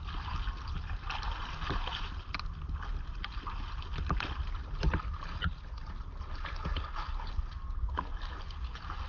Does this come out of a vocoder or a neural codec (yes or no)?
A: no